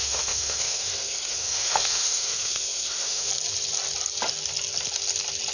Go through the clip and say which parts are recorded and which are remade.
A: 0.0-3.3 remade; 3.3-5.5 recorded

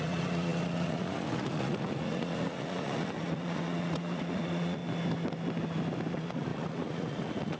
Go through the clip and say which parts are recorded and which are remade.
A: 0.0-4.8 remade; 4.8-6.1 recorded; 6.1-7.6 remade

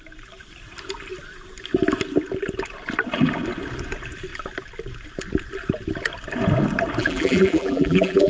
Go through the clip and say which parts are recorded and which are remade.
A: 0.0-7.0 recorded; 7.0-8.3 remade

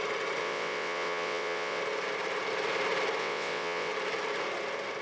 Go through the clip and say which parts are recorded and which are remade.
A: 0.0-0.4 recorded; 0.4-1.8 remade; 1.8-3.2 recorded; 3.2-3.9 remade; 3.9-5.0 recorded